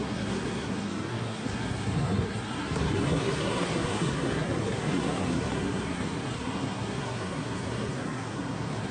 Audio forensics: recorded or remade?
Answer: remade